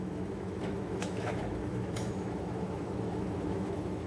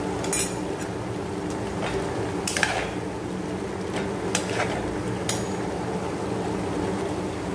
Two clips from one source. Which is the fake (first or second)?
first